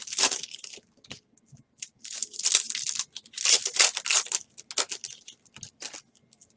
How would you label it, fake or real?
real